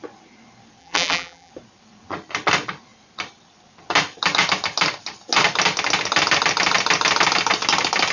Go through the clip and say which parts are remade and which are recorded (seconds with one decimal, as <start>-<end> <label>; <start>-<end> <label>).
0.0-0.8 recorded; 0.8-1.5 remade; 1.5-8.1 recorded